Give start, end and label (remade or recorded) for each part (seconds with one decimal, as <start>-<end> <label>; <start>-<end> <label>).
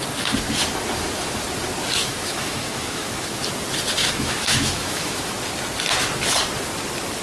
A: 0.0-2.0 recorded; 2.0-3.4 remade; 3.4-4.0 recorded; 4.0-5.2 remade; 5.2-7.2 recorded